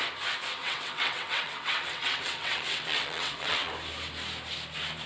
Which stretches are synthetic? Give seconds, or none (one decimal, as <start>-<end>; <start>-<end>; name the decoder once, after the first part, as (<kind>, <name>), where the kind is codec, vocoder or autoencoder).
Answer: 0.6-3.7 (vocoder, WaveNeXt)